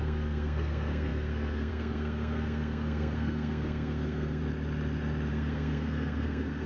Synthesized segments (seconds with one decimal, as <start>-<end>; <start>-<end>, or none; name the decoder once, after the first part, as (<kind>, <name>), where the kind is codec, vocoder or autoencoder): 0.0-4.4 (codec, SNAC); 5.3-6.7

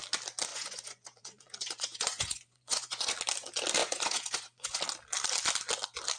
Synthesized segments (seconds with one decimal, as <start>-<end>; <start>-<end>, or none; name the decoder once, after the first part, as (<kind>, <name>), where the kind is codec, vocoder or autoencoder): 0.5-3.1 (vocoder, Vocos); 3.8-4.8

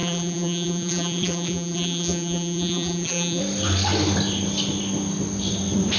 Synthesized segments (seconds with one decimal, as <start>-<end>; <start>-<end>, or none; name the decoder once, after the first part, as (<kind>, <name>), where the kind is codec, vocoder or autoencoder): 0.0-3.4 (vocoder, BigVGAN v2)